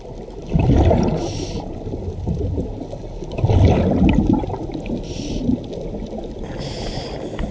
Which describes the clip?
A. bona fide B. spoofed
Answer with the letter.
A